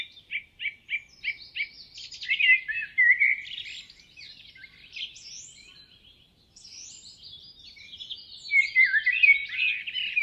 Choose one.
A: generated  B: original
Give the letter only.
B